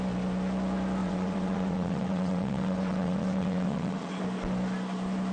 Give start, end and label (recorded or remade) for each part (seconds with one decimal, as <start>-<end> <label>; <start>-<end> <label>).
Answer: 0.0-1.0 recorded; 1.0-4.2 remade; 4.2-5.3 recorded